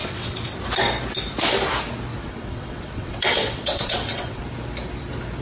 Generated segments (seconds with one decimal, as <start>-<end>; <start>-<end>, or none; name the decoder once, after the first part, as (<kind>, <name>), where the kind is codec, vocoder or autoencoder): 0.0-0.6 (vocoder, WaveNeXt); 2.1-4.4